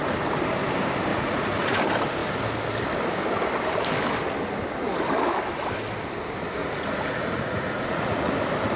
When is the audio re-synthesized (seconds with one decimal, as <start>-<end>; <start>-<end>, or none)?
1.1-1.8; 6.6-8.3